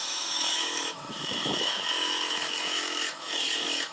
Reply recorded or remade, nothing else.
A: remade